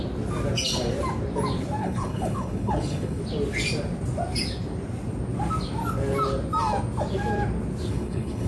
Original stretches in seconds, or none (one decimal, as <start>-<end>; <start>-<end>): 0.0-1.8; 3.2-7.9